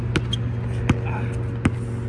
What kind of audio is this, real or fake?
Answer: real